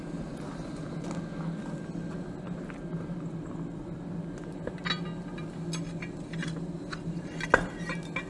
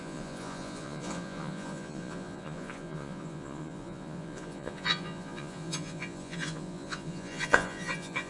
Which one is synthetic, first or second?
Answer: second